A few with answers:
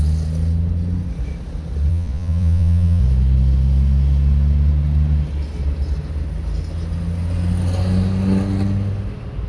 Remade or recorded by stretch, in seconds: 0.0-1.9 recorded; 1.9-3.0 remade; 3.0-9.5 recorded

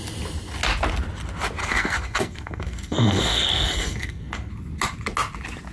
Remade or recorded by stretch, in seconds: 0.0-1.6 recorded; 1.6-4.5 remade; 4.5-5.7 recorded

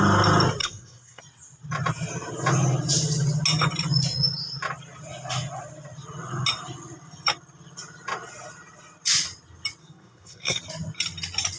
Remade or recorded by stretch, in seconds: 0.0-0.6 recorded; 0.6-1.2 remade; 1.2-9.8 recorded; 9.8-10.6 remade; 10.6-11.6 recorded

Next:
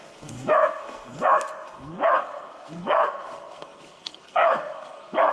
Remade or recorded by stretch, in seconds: 0.0-5.3 remade